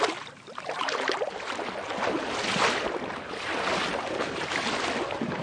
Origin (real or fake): real